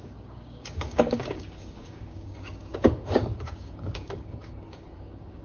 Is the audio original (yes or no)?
no